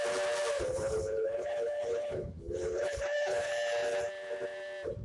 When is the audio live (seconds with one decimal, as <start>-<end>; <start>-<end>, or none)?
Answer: 0.0-0.5; 3.5-5.0